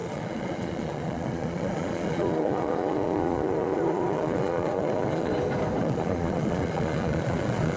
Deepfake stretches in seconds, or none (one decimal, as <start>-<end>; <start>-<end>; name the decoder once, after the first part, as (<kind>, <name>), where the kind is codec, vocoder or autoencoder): 0.0-5.3 (vocoder, Vocos); 5.8-7.8